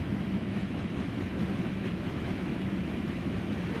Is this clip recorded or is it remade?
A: remade